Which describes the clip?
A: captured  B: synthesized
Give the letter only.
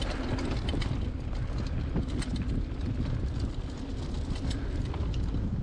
A